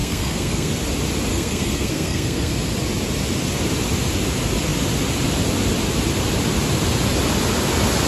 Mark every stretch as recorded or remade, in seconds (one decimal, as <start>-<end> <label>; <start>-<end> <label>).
0.0-0.7 remade; 0.7-1.3 recorded; 1.3-2.5 remade; 2.5-8.1 recorded